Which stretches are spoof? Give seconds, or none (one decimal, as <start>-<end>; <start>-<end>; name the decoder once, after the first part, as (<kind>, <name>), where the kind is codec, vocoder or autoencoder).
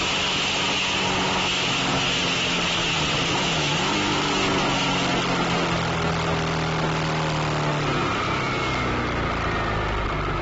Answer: none